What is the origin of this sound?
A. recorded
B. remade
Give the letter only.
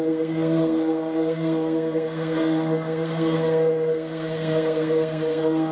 B